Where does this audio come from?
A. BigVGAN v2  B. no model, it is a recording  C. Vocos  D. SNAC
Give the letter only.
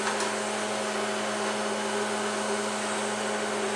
B